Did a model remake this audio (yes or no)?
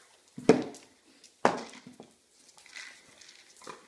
no